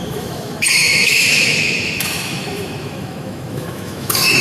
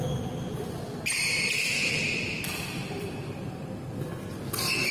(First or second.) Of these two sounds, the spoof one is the first